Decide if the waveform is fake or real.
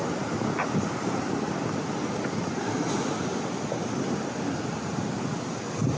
real